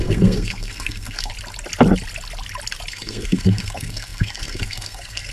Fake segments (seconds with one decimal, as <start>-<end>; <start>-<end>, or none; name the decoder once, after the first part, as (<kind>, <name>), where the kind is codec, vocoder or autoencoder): 0.0-1.3 (codec, SNAC); 2.9-5.3